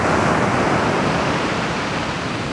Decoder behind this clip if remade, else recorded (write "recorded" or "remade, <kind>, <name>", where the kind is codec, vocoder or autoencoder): recorded